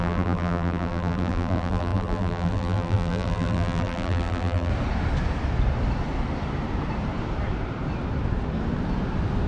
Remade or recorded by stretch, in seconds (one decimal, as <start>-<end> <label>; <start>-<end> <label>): 0.0-4.7 remade; 4.7-9.5 recorded